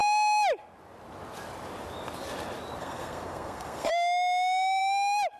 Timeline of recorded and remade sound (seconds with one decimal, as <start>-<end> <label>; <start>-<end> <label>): 0.0-2.8 recorded; 2.8-3.9 remade; 3.9-5.4 recorded